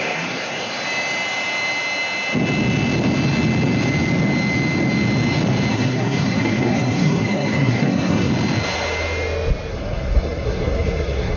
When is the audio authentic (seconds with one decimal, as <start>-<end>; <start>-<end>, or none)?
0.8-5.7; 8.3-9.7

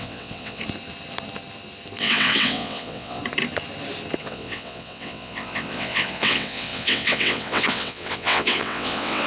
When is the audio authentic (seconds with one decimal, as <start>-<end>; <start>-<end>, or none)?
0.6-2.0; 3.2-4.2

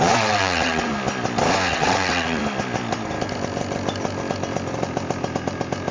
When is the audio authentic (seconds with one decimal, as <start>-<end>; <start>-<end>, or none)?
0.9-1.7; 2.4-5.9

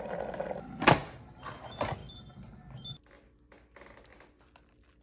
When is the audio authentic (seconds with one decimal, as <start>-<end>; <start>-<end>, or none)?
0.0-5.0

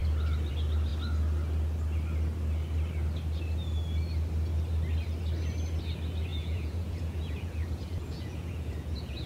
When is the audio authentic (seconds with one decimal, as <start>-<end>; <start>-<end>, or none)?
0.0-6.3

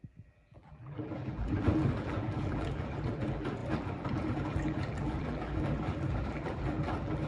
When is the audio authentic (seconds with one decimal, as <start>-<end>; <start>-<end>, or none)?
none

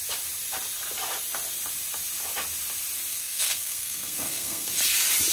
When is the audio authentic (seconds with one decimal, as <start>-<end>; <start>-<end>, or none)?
0.0-3.1; 4.7-5.3

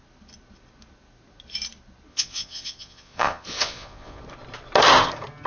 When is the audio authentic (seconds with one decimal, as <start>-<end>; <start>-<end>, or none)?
0.0-2.1; 4.2-5.5